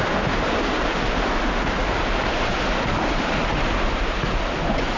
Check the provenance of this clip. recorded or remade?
recorded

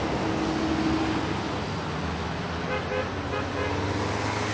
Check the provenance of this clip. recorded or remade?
recorded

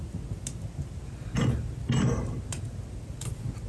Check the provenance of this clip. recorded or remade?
recorded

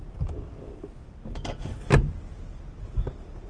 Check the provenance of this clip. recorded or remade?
recorded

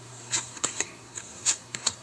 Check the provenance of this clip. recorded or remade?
remade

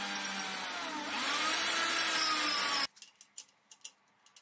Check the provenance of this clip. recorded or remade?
recorded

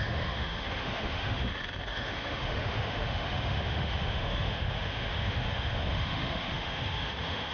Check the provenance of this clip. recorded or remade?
remade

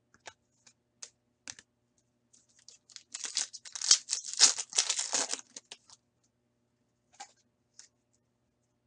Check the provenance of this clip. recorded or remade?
recorded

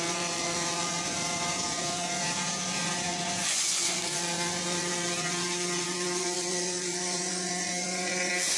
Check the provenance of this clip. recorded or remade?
remade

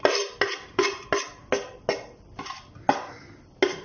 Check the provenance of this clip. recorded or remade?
recorded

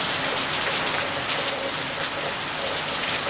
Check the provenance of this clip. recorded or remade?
recorded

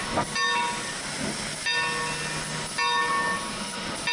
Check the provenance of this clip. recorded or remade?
recorded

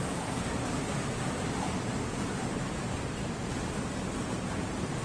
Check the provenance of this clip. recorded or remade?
remade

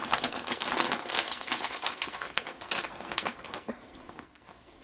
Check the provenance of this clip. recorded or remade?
remade